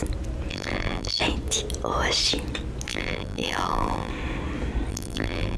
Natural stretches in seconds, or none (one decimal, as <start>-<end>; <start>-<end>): 0.0-0.5; 1.2-2.9; 4.1-4.9